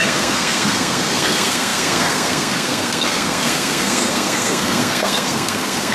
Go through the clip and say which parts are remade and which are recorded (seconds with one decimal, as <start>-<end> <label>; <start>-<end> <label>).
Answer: 0.0-5.9 remade